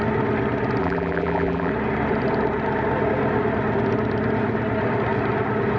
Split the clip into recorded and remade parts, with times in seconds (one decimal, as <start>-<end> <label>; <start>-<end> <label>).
0.0-0.8 recorded; 0.8-1.7 remade; 1.7-5.8 recorded